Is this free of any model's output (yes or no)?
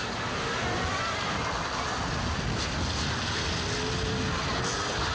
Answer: yes